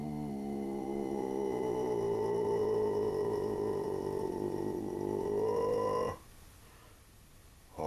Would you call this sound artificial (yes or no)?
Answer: no